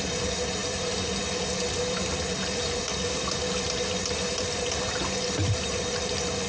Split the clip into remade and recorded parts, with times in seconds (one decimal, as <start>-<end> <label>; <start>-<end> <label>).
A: 0.0-6.5 recorded